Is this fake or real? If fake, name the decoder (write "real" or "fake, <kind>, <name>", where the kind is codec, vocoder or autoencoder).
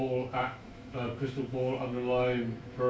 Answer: fake, autoencoder, DAC-VAE